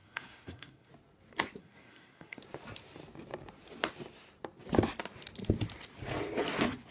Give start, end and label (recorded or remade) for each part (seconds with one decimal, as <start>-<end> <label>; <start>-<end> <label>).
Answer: 0.0-0.9 remade; 0.9-1.6 recorded; 1.6-2.4 remade; 2.4-6.9 recorded